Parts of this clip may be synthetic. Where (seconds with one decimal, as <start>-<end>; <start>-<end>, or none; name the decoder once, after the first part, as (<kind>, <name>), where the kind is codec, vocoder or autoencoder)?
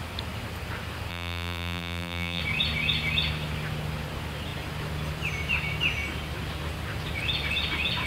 1.1-2.4 (vocoder, BigVGAN v2)